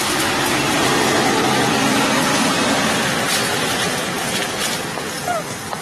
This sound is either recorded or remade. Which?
recorded